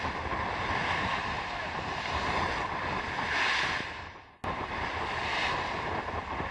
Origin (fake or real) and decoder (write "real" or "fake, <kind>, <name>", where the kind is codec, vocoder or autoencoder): real